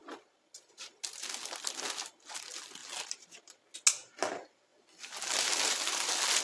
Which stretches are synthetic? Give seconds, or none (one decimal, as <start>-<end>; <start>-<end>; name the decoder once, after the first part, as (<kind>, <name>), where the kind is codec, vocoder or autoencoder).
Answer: none